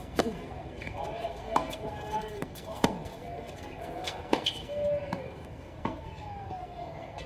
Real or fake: fake